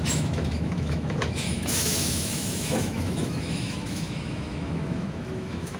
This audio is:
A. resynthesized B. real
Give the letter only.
A